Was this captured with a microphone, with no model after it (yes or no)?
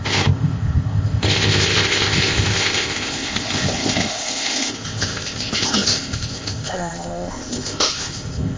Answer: no